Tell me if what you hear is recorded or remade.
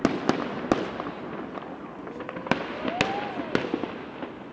recorded